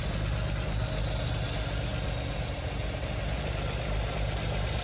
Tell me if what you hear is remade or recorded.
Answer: recorded